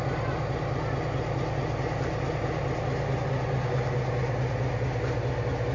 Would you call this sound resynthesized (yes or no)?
no